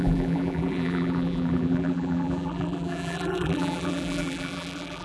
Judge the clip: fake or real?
fake